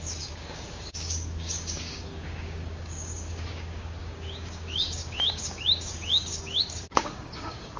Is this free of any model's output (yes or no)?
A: no